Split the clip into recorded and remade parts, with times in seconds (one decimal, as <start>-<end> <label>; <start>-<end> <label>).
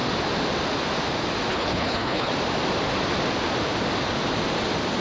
0.0-1.5 recorded; 1.5-2.3 remade; 2.3-5.0 recorded